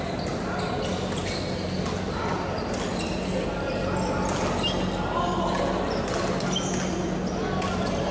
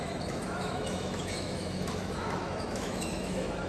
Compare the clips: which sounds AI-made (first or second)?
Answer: second